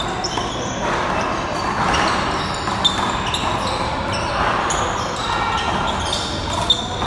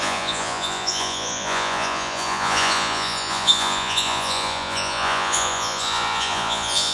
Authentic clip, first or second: first